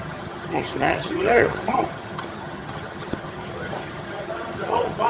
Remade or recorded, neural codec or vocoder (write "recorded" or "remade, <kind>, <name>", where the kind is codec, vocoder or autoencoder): remade, vocoder, HiFi-GAN